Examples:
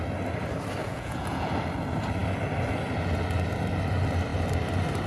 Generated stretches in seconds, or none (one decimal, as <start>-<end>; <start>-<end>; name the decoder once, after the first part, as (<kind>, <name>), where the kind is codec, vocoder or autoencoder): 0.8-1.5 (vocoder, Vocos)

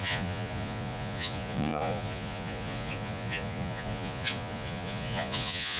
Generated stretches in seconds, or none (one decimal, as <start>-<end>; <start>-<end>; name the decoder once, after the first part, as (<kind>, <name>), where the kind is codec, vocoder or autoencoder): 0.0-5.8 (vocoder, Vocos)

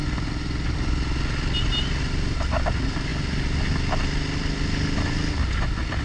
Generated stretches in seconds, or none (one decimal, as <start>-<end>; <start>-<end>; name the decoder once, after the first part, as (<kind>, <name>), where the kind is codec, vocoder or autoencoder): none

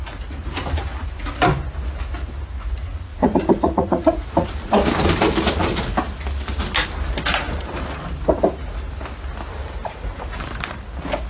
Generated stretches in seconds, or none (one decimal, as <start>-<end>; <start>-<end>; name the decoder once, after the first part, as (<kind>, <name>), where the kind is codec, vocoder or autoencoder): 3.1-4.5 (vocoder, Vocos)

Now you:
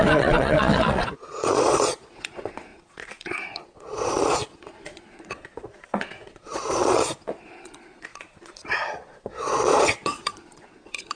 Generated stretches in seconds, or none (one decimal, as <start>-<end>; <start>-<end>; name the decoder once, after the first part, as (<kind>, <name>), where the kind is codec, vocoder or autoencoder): 0.0-11.2 (vocoder, Vocos)

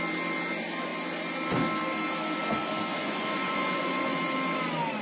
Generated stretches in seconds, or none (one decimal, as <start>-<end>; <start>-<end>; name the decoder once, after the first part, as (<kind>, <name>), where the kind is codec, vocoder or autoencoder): 2.9-4.2 (vocoder, Vocos)

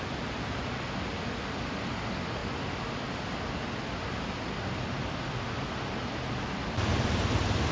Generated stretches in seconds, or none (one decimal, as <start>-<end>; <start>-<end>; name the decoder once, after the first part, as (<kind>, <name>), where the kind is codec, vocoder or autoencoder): none

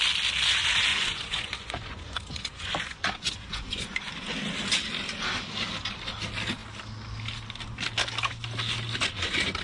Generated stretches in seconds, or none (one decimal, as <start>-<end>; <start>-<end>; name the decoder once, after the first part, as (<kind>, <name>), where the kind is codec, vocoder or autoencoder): 0.9-4.0 (vocoder, Vocos)